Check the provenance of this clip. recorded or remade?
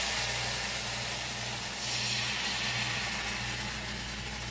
recorded